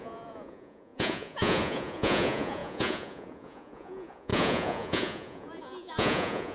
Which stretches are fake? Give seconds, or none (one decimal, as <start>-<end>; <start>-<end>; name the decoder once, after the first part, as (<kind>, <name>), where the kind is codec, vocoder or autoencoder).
0.0-6.5 (vocoder, Vocos)